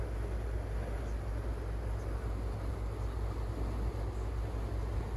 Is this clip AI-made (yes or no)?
no